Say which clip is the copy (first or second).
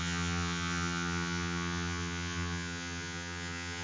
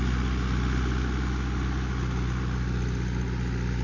first